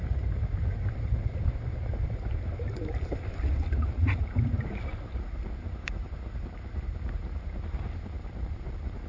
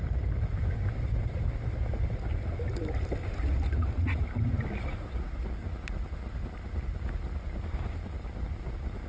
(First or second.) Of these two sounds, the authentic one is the second